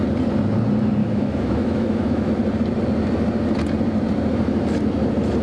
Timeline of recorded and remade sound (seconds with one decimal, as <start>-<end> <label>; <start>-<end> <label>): 0.0-1.0 recorded; 1.0-2.3 remade; 2.3-5.4 recorded